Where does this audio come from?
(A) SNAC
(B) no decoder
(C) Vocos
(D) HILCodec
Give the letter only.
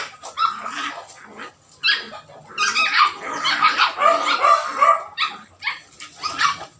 B